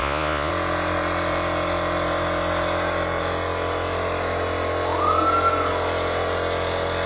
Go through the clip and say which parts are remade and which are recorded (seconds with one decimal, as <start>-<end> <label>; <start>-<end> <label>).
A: 0.0-0.5 remade; 0.5-7.1 recorded